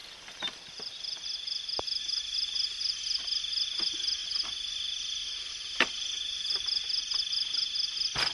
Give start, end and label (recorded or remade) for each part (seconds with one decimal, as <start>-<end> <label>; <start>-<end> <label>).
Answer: 0.0-1.8 remade; 1.8-8.3 recorded